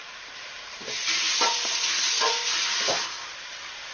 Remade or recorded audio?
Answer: recorded